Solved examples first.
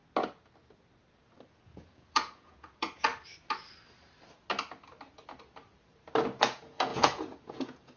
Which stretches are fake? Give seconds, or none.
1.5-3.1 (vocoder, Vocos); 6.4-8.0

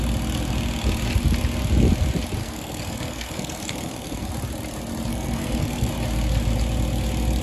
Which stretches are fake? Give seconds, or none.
2.4-4.3 (codec, SNAC); 5.1-5.9

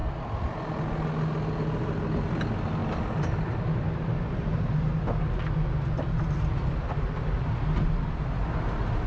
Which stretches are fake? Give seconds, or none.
none

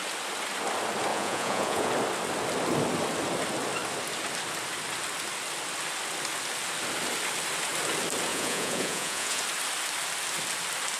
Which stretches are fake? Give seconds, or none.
1.1-1.9 (vocoder, Vocos); 8.3-9.4

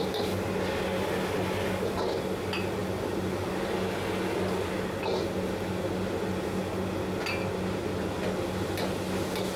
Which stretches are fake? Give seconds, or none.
2.8-3.6 (vocoder, BigVGAN v2)

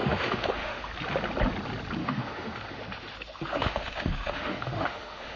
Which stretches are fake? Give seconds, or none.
0.0-0.9 (autoencoder, DAC-VAE); 2.0-5.4